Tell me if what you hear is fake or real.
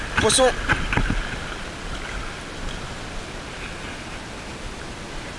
real